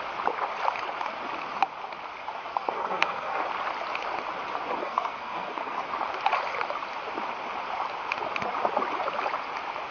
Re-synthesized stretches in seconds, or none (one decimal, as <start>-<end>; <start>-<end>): 2.5-3.4; 4.8-5.8